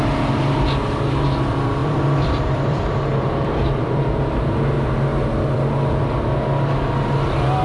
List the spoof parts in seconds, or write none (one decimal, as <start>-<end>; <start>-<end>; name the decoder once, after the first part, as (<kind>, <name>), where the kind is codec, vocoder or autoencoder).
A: 1.8-4.5 (vocoder, BigVGAN v2)